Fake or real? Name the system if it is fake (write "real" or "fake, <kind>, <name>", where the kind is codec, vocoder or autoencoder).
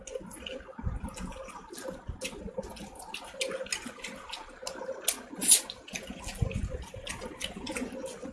real